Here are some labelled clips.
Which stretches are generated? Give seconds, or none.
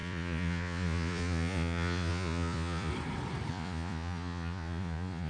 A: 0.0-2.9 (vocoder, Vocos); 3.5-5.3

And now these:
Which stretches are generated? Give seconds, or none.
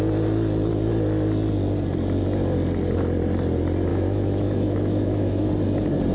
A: 3.9-5.5 (autoencoder, DAC-VAE)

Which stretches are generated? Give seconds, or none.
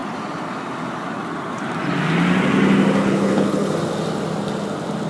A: 3.0-3.7 (codec, HILCodec)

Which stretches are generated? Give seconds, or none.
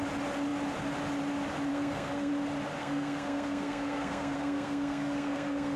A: 1.7-2.3 (codec, SNAC); 2.8-5.8